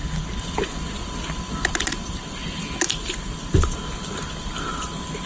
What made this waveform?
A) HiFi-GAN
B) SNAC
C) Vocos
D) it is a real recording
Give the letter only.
D